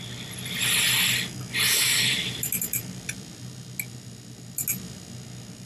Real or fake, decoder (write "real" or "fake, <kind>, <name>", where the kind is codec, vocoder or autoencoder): real